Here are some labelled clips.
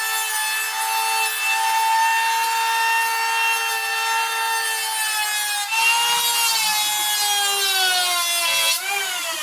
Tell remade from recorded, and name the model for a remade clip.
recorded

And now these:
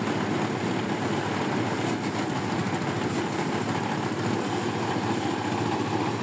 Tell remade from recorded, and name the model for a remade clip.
recorded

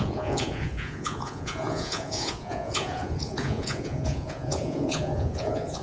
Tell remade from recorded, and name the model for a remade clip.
remade, vocoder, Vocos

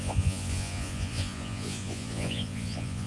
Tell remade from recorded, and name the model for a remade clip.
remade, vocoder, Vocos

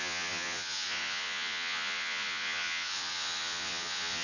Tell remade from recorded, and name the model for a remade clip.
remade, vocoder, Vocos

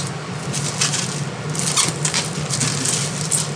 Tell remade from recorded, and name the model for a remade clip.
recorded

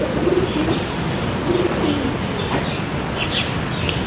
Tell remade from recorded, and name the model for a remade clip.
recorded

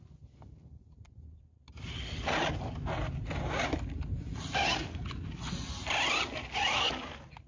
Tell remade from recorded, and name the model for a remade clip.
recorded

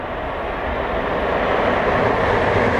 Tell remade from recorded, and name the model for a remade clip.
recorded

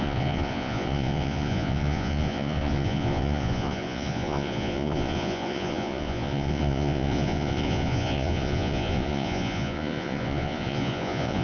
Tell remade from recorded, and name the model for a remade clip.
remade, vocoder, Vocos